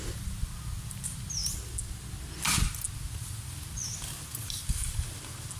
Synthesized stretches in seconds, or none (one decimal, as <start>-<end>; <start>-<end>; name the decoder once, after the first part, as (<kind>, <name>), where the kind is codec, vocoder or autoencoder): 1.4-2.1 (vocoder, BigVGAN v2)

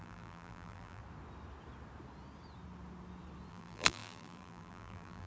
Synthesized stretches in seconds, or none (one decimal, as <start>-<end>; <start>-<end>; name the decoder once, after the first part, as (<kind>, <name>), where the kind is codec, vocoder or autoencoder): 0.0-1.0 (vocoder, BigVGAN v2); 3.5-5.3